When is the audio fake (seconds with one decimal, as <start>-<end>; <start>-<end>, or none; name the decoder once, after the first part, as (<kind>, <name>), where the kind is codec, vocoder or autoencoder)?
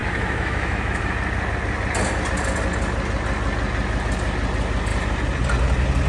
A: 0.0-1.0 (autoencoder, DAC-VAE)